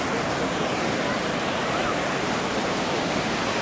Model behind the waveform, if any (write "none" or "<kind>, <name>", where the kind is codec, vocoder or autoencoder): none